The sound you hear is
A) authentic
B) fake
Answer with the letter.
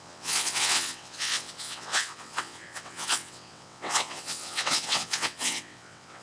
B